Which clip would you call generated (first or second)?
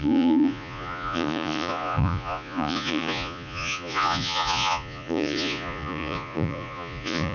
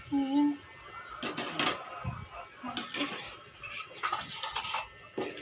first